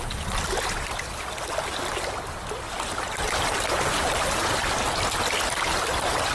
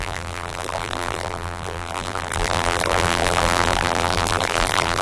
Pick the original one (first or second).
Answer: first